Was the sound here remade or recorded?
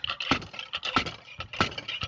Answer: recorded